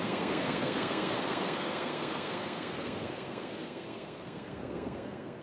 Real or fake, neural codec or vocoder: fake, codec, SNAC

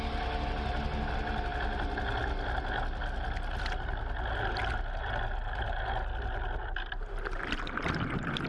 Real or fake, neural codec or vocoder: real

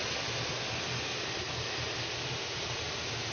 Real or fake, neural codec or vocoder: real